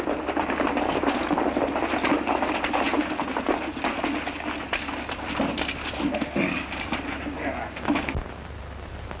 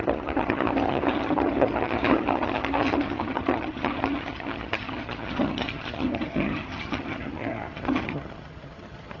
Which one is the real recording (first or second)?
first